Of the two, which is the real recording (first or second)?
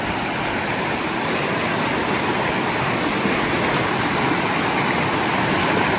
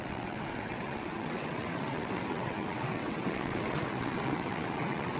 first